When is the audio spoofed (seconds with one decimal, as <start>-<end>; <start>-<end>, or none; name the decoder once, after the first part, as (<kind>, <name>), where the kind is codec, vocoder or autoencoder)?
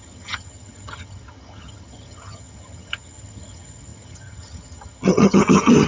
0.0-5.9 (vocoder, HiFi-GAN)